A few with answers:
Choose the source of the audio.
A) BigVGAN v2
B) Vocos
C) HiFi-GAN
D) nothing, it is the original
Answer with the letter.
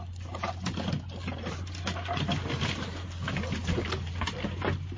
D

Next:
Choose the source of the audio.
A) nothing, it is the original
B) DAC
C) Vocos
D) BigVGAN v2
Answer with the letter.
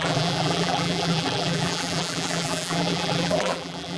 D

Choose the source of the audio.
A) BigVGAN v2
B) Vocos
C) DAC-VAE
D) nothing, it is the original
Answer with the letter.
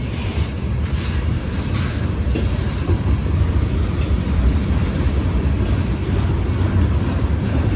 A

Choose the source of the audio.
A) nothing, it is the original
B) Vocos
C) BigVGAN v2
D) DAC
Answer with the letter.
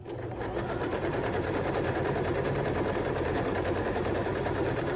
C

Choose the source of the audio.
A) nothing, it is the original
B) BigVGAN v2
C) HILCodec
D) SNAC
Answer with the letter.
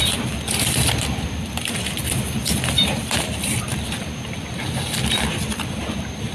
B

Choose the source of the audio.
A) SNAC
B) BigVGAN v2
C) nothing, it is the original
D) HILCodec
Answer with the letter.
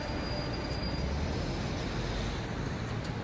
C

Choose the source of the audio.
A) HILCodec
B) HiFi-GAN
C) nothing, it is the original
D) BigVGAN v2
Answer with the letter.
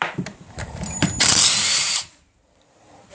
D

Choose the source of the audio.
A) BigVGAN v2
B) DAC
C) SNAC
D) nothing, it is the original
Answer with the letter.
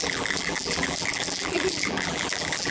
A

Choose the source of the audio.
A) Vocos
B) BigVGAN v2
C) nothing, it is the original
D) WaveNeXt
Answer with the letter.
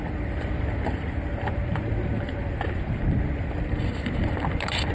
B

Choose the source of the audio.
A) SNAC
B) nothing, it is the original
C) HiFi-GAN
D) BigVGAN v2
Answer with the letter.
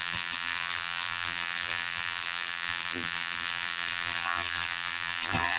D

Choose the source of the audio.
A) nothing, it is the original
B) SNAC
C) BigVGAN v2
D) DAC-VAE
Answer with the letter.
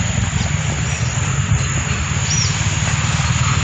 A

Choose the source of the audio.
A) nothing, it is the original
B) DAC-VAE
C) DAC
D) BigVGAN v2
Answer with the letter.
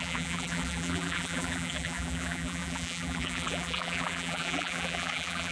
D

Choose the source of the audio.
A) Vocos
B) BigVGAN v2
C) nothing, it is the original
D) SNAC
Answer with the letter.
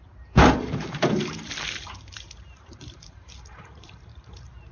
B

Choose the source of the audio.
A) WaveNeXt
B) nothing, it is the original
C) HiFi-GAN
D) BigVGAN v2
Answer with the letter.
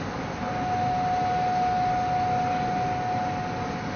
B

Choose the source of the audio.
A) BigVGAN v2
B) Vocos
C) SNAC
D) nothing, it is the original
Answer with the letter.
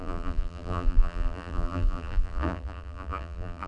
A